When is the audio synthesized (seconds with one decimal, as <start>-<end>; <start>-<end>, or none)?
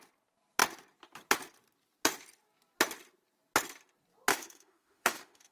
4.3-5.5